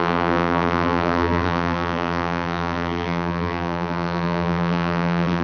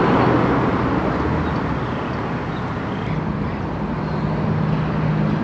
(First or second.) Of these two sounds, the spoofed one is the first